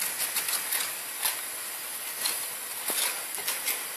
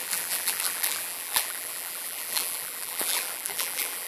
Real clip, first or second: first